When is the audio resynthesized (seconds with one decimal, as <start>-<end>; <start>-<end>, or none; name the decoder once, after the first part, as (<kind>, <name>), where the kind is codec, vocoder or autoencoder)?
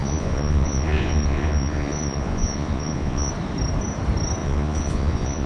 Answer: 0.0-3.3 (vocoder, Vocos); 4.4-5.5